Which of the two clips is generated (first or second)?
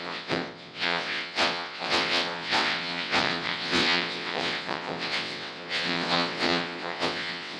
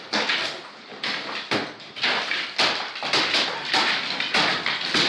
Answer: first